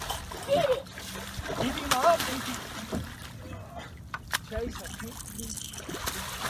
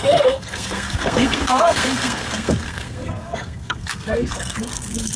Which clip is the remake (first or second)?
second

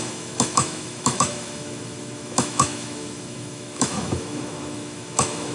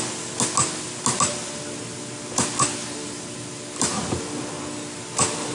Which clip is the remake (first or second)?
first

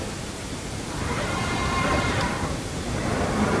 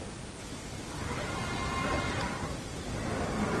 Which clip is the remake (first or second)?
first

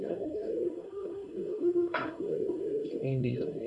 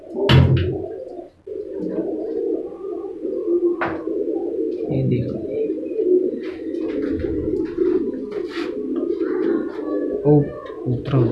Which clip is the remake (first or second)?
first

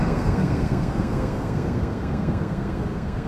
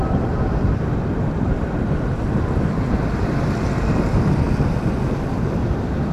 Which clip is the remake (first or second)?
first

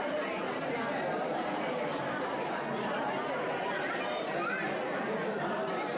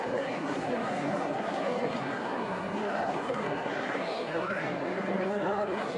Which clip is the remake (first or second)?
second